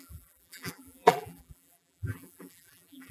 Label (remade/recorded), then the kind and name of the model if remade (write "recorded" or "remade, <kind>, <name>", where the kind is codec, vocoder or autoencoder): remade, vocoder, BigVGAN v2